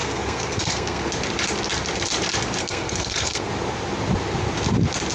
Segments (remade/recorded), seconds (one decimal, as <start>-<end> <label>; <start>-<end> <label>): 0.0-1.1 remade; 1.1-2.6 recorded; 2.6-3.5 remade; 3.5-5.1 recorded